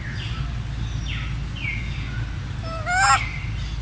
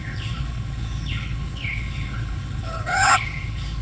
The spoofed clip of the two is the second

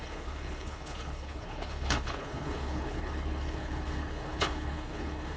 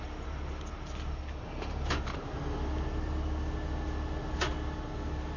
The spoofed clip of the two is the first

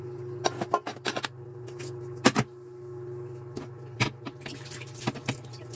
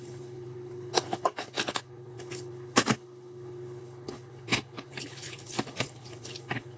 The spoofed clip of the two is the second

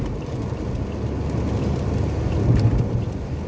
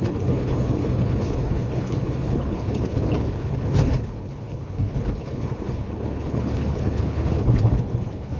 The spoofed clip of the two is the second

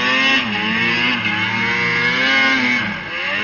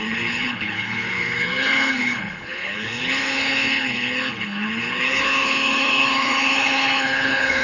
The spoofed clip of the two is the second